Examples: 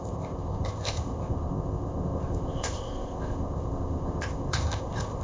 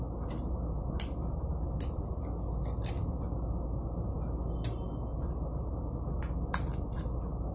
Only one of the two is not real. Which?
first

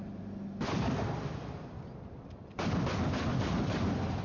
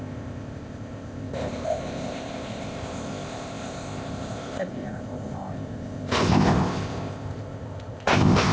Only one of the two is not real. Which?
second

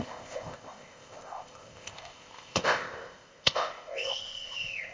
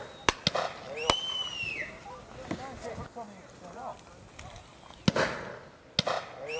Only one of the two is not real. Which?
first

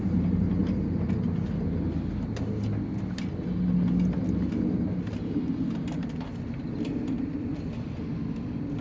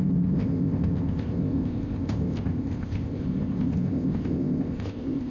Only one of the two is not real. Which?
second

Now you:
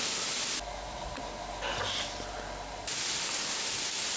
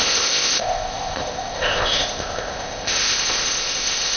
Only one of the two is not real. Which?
second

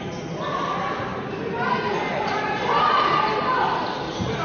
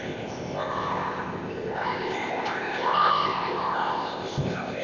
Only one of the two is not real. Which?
second